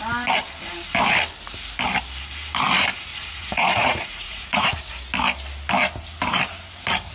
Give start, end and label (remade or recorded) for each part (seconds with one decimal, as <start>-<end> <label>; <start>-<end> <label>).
0.0-3.1 recorded; 3.1-4.9 remade; 4.9-7.1 recorded